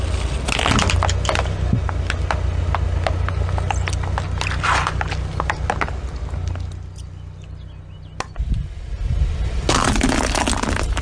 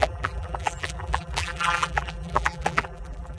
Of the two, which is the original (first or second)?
first